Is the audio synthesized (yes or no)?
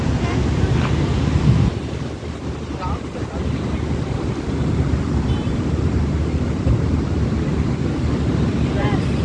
no